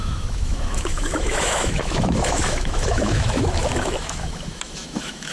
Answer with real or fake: fake